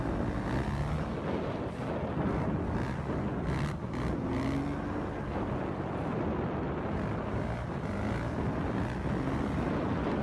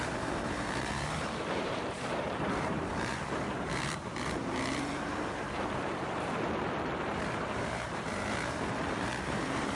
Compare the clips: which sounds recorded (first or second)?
first